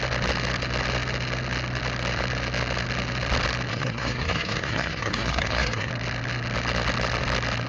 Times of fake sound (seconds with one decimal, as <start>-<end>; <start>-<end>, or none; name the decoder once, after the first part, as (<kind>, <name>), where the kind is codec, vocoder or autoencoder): 3.7-5.9 (codec, SNAC)